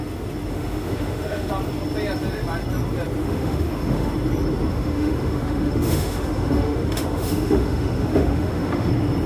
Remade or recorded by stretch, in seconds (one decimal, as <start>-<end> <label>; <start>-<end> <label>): 0.0-0.5 recorded; 0.5-1.5 remade; 1.5-3.2 recorded; 3.2-4.1 remade; 4.1-4.7 recorded; 4.7-8.9 remade; 8.9-9.3 recorded

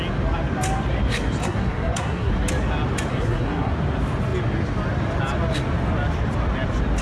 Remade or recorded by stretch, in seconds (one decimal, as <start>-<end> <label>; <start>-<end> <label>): 0.0-1.4 recorded; 1.4-2.3 remade; 2.3-3.1 recorded; 3.1-3.7 remade; 3.7-7.0 recorded

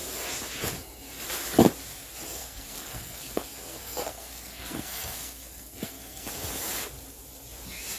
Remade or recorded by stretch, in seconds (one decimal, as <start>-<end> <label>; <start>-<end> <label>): 0.0-2.4 recorded; 2.4-6.3 remade; 6.3-8.0 recorded

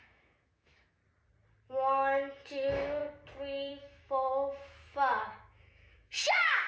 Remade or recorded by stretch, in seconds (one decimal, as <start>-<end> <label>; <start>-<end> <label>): 0.0-1.0 remade; 1.0-2.3 recorded; 2.3-3.0 remade; 3.0-3.7 recorded; 3.7-6.7 remade

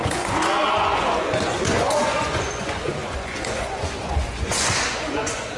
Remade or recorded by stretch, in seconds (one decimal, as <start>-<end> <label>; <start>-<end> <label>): 0.0-5.6 remade

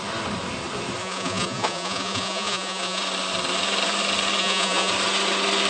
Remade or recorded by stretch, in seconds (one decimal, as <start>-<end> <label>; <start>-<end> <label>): 0.0-1.0 recorded; 1.0-3.0 remade; 3.0-4.4 recorded; 4.4-4.9 remade; 4.9-5.7 recorded

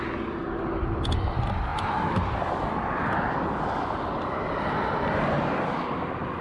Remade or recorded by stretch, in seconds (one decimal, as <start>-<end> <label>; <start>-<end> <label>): 0.0-1.7 recorded; 1.7-4.6 remade; 4.6-6.4 recorded